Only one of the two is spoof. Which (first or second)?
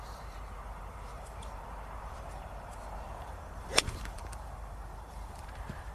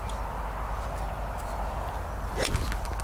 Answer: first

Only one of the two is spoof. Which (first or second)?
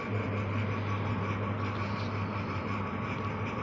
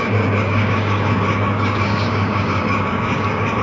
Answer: second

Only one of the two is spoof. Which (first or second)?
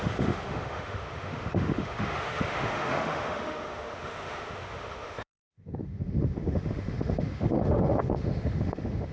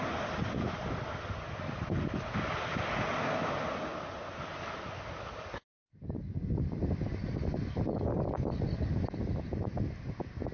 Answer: first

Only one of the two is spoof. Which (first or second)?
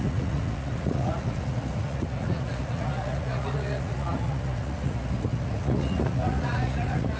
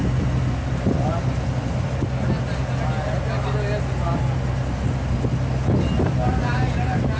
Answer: first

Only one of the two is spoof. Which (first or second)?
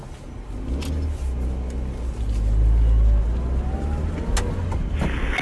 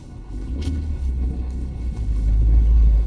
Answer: second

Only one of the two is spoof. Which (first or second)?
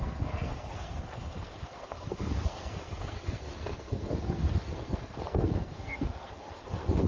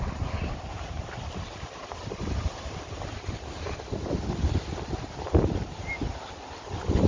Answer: first